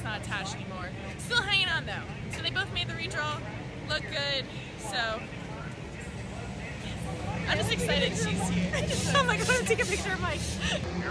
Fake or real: real